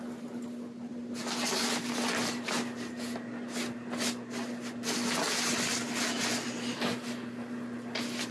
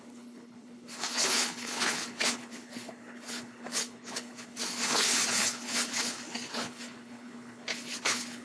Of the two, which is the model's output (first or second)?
second